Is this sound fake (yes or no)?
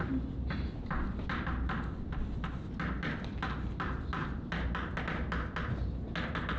no